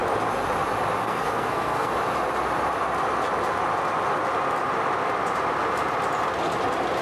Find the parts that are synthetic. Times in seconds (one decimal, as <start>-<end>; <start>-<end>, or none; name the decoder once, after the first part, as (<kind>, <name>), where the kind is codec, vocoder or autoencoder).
1.0-1.9 (codec, SNAC)

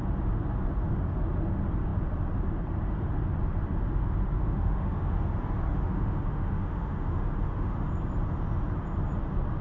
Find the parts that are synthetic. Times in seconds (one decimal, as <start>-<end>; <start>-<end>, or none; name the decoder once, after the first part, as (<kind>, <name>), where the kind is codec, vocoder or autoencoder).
4.4-5.2 (autoencoder, DAC-VAE); 5.7-7.9

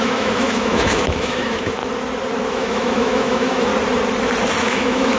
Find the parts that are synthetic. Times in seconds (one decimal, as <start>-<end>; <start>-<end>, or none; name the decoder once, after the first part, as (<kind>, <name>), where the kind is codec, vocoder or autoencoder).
0.0-1.8 (autoencoder, DAC-VAE); 2.5-3.7; 4.6-5.2

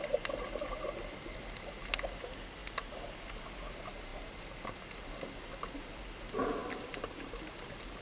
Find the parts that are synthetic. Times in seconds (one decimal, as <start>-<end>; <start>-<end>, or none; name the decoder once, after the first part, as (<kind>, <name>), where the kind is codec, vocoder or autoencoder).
none

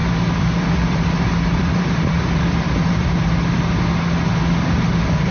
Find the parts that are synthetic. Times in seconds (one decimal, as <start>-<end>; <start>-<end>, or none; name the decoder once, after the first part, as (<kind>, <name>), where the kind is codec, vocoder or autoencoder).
0.0-3.2 (vocoder, BigVGAN v2)

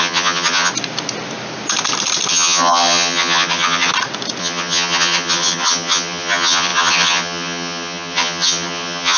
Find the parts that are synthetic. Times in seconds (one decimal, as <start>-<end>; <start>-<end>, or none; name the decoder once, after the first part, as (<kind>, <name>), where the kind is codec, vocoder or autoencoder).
0.0-0.7 (vocoder, HiFi-GAN); 2.3-3.9; 4.4-9.2

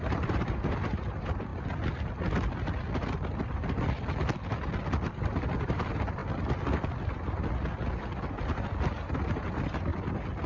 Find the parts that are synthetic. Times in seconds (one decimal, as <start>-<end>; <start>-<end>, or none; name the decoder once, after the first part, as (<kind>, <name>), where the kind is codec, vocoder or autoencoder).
0.0-1.5 (vocoder, BigVGAN v2); 5.6-6.2; 8.8-9.9